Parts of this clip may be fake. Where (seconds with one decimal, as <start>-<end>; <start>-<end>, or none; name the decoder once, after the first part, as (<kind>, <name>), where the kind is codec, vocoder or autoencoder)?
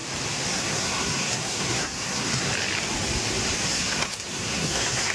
0.5-2.5 (codec, SNAC); 3.7-5.1